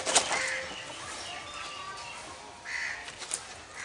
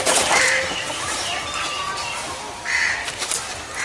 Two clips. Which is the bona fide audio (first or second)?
first